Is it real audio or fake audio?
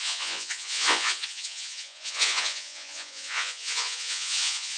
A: fake